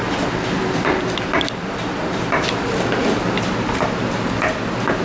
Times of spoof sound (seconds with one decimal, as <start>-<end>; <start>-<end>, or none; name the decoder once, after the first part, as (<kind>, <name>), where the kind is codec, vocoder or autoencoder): none